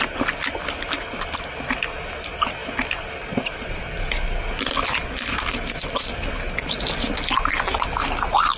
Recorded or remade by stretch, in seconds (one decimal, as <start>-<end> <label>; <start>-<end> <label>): 0.0-8.6 recorded